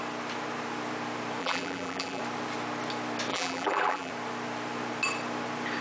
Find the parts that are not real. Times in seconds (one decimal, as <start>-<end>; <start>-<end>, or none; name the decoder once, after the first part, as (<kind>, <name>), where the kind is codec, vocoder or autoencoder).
1.4-2.2 (vocoder, BigVGAN v2); 3.3-4.1